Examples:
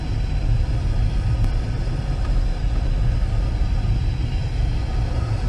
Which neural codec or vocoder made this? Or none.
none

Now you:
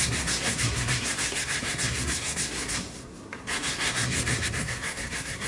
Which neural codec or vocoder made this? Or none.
codec, SNAC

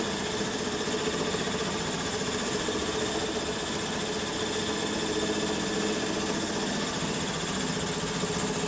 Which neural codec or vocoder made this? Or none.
none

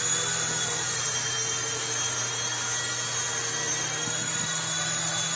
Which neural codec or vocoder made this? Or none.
none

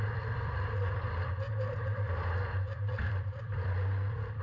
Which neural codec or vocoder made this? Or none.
vocoder, BigVGAN v2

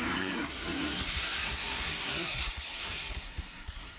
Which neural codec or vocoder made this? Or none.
codec, SNAC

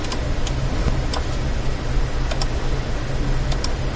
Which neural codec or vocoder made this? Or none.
none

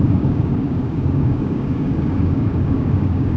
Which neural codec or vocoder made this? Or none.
codec, DAC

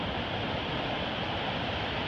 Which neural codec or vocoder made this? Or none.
none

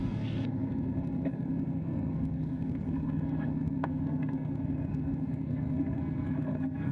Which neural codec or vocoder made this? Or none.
codec, SNAC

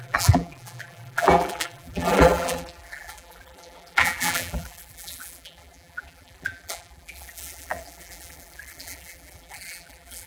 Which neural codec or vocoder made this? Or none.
vocoder, BigVGAN v2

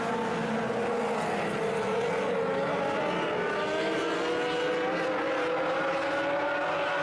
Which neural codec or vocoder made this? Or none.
none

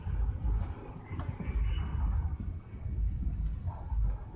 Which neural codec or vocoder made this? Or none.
none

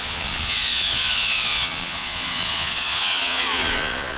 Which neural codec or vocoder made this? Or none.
vocoder, Vocos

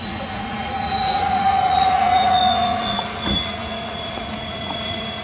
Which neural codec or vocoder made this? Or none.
vocoder, Vocos